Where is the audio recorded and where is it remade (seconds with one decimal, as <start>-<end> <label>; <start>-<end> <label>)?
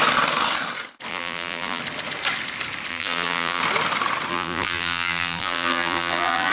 0.0-1.1 recorded; 1.1-1.8 remade; 1.8-2.9 recorded; 2.9-3.6 remade; 3.6-4.3 recorded; 4.3-6.5 remade